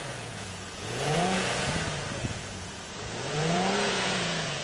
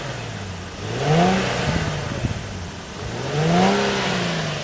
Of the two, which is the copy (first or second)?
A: first